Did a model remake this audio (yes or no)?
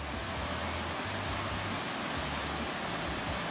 no